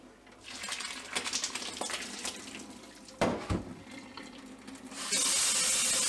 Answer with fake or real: real